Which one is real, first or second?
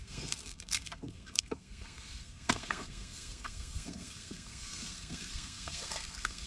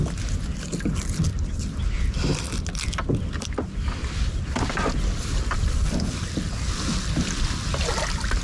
second